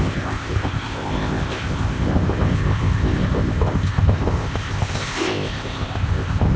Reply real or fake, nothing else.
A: fake